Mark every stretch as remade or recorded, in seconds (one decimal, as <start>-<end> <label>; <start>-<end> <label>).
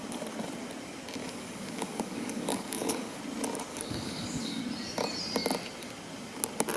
0.0-1.2 recorded; 1.2-3.2 remade; 3.2-3.7 recorded; 3.7-4.6 remade; 4.6-6.8 recorded